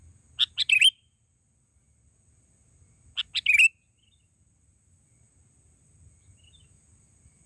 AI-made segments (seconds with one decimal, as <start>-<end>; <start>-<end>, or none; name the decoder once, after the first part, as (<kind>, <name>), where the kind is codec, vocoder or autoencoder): none